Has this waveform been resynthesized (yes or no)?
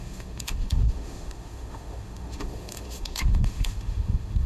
yes